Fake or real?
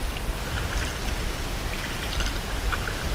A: real